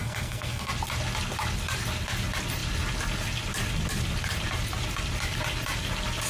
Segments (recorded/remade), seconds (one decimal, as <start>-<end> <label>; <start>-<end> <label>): 0.0-0.7 remade; 0.7-6.3 recorded